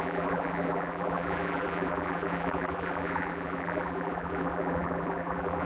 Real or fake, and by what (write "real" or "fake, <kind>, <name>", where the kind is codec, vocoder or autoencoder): fake, vocoder, BigVGAN v2